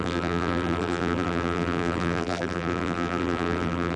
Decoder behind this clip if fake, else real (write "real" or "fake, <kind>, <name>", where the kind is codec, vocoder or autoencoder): fake, vocoder, BigVGAN v2